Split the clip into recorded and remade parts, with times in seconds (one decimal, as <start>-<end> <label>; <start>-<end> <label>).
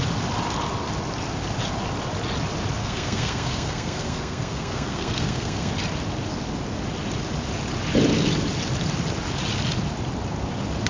0.0-2.8 recorded; 2.8-5.7 remade; 5.7-10.9 recorded